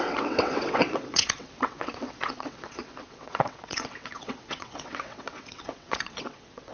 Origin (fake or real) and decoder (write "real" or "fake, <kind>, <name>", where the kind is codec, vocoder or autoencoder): fake, vocoder, WaveNeXt